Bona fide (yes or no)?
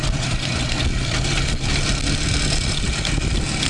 yes